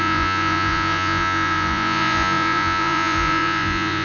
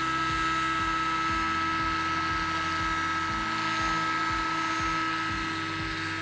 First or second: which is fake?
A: first